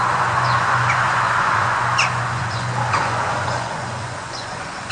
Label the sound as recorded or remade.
remade